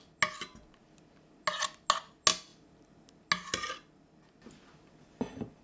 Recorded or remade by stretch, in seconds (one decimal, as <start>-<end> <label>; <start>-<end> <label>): 0.0-5.6 recorded